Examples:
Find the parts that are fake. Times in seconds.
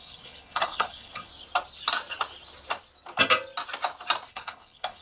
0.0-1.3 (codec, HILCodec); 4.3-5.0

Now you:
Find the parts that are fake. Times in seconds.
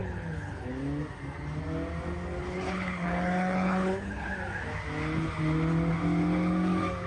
0.0-0.7 (codec, HILCodec); 2.4-4.3